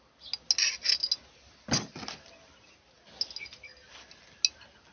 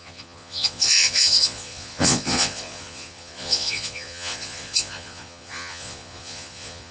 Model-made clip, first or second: second